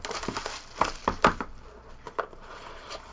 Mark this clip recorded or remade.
recorded